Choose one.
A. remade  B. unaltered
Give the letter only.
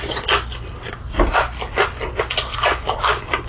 B